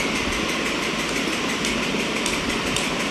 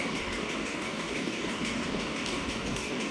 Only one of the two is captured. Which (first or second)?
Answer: first